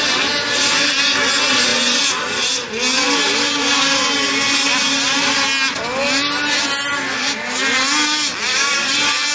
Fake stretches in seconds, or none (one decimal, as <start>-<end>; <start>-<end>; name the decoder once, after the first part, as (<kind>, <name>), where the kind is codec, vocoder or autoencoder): none